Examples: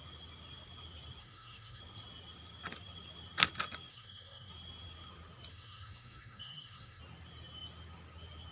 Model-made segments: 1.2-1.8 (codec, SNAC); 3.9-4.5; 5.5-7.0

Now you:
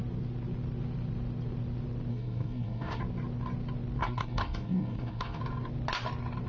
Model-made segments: 2.1-3.0 (codec, SNAC); 4.0-5.4

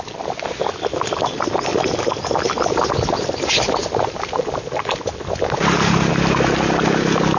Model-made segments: none

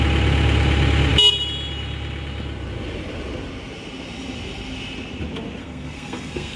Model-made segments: 5.6-6.6 (codec, SNAC)